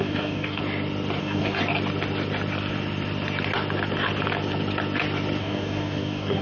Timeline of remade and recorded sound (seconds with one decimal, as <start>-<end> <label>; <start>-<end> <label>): 0.0-0.6 remade; 0.6-1.2 recorded; 1.2-1.6 remade; 1.6-5.4 recorded; 5.4-6.4 remade